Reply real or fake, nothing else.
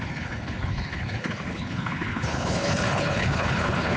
fake